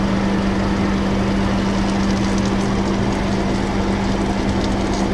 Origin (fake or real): real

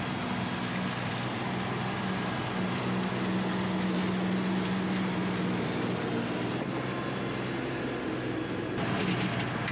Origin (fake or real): real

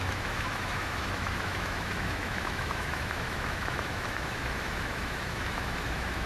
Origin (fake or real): fake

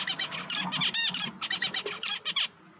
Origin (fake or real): real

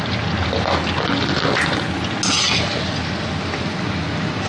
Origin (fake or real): real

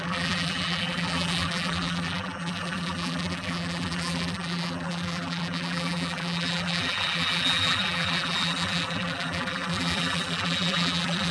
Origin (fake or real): fake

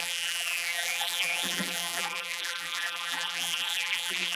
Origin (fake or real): fake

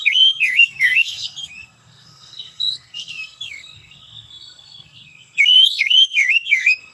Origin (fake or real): fake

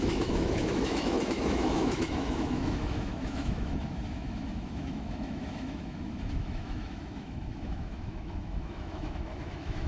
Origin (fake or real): fake